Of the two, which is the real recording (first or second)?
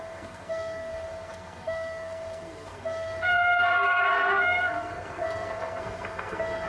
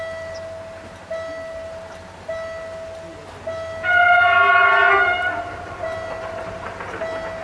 second